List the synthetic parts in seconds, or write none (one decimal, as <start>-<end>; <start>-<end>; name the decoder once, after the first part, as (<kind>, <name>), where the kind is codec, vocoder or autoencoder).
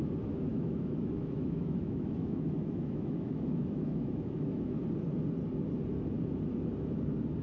0.5-4.8 (autoencoder, DAC-VAE)